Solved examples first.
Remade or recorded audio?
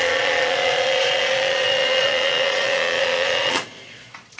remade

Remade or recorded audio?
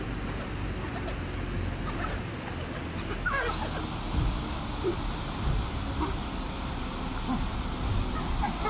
recorded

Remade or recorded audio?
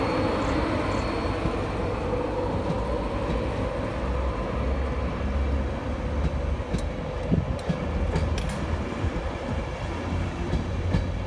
recorded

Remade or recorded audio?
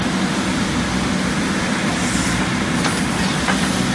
recorded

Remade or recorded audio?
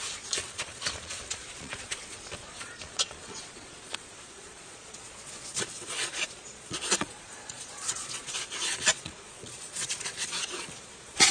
remade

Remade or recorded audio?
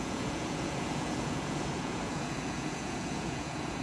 remade